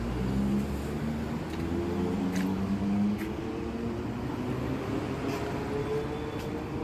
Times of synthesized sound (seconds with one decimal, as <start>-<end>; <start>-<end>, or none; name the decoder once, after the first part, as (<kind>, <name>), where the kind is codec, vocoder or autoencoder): 2.5-3.5 (codec, DAC)